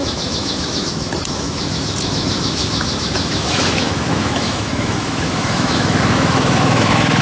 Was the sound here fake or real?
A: fake